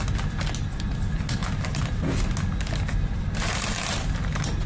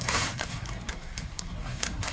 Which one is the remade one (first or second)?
second